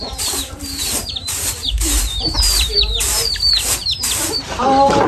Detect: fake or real fake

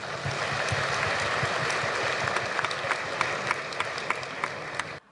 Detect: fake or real real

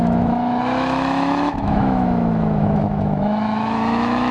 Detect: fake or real fake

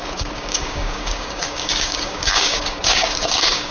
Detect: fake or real fake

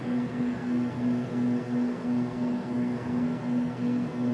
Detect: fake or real fake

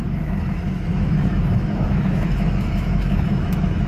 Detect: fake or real fake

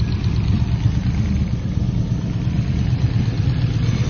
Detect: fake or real fake